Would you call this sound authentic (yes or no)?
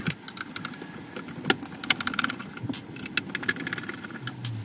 yes